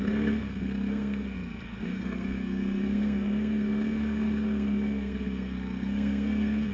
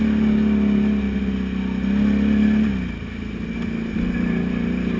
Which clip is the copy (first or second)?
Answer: first